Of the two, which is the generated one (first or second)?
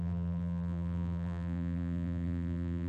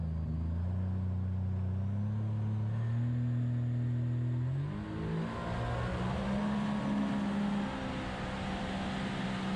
first